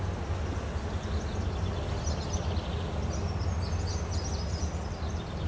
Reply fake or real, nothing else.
real